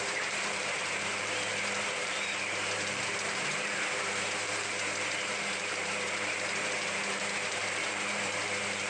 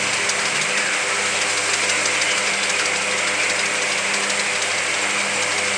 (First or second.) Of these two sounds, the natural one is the second